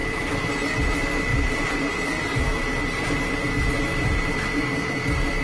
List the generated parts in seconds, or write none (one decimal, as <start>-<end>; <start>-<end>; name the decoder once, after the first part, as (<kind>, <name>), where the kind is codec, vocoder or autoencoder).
0.0-0.5 (vocoder, BigVGAN v2); 1.3-3.7